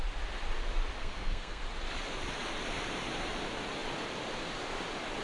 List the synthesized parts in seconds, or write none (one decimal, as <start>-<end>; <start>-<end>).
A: 1.0-1.6

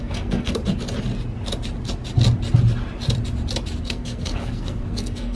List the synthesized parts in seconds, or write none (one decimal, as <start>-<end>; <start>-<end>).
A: 0.0-0.6; 3.8-5.4

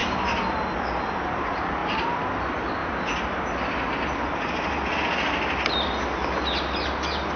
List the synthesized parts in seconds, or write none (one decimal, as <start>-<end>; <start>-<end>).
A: 1.2-1.8; 2.4-2.8

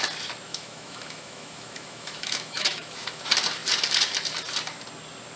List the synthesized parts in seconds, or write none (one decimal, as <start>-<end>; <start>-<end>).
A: 0.5-3.2

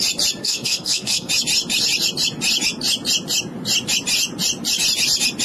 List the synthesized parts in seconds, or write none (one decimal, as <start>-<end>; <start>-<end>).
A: 0.4-1.3

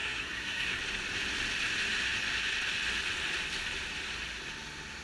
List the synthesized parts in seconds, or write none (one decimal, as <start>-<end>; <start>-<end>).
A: 0.0-0.8

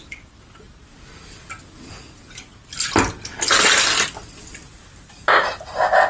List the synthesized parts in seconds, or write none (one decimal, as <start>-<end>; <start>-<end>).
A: none

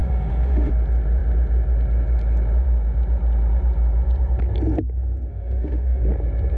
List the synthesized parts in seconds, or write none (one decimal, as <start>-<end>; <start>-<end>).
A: 0.0-0.7; 5.3-6.0